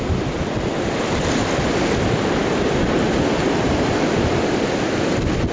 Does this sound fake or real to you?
real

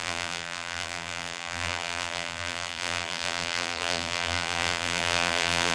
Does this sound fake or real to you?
fake